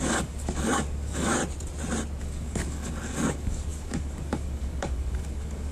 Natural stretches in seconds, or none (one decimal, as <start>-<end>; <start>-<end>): 1.4-2.2

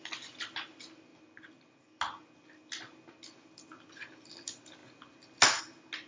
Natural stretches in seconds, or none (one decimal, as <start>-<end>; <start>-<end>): 0.0-6.1